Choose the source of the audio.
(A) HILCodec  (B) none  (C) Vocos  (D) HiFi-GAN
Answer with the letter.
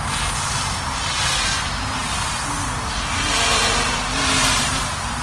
B